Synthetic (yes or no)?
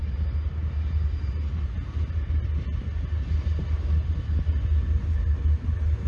no